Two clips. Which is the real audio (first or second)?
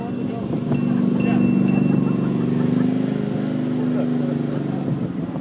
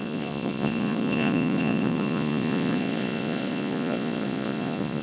first